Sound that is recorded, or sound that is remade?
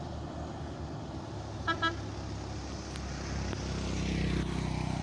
recorded